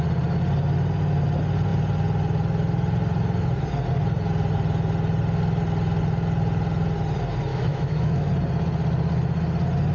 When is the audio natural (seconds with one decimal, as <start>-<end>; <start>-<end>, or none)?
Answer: 0.0-7.5; 8.3-9.9